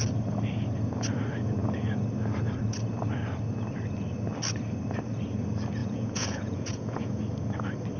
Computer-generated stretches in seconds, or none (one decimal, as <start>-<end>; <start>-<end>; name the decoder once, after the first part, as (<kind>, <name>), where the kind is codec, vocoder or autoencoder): 5.8-7.2 (vocoder, Vocos)